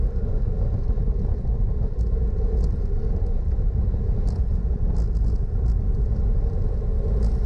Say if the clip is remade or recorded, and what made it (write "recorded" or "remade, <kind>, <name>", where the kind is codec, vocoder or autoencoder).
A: recorded